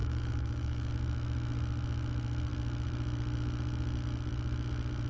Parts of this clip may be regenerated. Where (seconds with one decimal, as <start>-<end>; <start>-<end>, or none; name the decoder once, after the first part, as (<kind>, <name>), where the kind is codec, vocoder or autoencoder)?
0.0-0.9 (autoencoder, DAC-VAE)

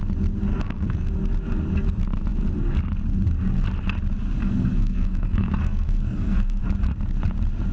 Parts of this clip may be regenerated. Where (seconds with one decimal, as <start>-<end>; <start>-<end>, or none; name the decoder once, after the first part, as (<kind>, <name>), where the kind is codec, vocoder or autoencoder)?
0.5-1.1 (codec, SNAC); 4.4-6.6

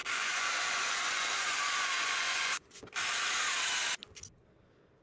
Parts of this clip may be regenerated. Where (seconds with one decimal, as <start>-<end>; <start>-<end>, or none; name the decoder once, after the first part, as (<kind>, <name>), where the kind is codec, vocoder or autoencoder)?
0.0-2.8 (vocoder, Vocos)

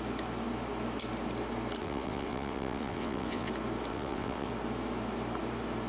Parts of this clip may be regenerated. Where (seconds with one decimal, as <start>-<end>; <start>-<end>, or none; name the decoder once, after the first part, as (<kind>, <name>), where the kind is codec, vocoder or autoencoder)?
1.8-3.5 (vocoder, WaveNeXt); 3.9-4.5

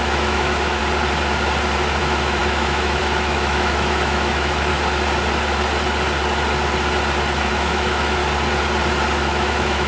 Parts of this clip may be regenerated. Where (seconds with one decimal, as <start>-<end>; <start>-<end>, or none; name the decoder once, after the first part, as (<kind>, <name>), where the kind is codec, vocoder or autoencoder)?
0.0-0.8 (autoencoder, DAC-VAE); 2.0-4.7; 7.5-8.2; 9.2-9.9

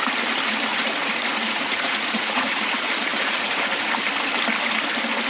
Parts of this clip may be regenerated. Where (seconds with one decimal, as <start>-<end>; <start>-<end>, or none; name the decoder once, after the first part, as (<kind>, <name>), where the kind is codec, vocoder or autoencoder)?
0.7-3.9 (vocoder, Vocos)